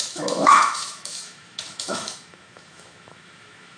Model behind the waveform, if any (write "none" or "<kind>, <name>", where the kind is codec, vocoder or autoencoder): autoencoder, DAC-VAE